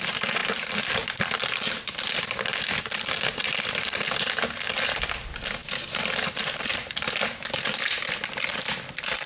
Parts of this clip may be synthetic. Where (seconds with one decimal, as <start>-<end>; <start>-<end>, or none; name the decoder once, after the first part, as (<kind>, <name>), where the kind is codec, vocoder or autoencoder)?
none